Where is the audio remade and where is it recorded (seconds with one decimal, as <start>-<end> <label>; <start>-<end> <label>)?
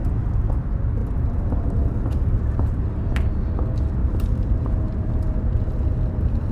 0.0-4.0 recorded; 4.0-5.7 remade; 5.7-6.5 recorded